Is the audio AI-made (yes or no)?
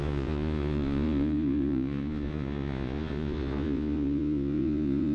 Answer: yes